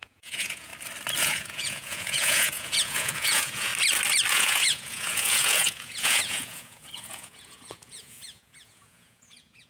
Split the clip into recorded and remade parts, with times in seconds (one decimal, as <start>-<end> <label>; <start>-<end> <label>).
0.0-0.7 remade; 0.7-1.2 recorded; 1.2-3.7 remade; 3.7-4.3 recorded; 4.3-9.7 remade